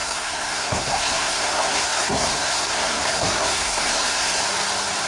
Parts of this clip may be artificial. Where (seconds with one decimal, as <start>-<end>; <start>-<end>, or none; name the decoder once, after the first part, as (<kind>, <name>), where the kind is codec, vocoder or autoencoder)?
0.0-4.4 (codec, SNAC)